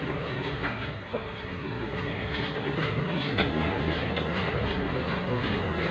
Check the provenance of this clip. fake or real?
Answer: fake